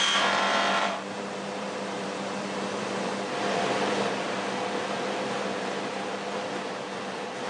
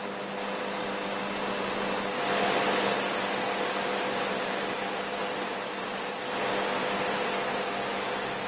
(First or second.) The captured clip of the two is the second